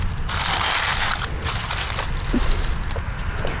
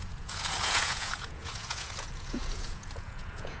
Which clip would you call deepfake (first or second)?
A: second